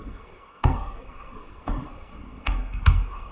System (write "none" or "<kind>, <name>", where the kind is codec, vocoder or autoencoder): codec, SNAC